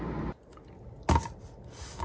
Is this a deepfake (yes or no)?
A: no